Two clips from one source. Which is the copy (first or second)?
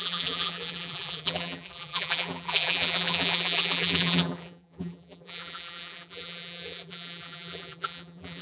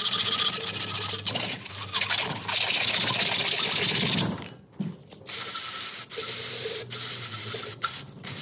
first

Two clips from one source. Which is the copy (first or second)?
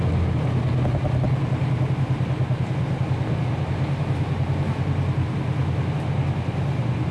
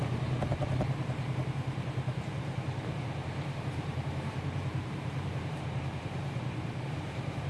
second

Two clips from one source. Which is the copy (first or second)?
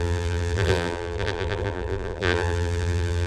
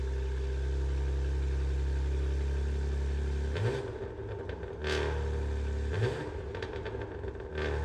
first